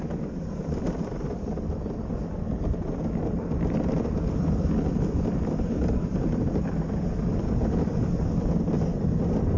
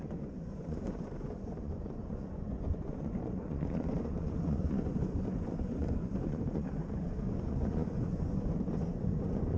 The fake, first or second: second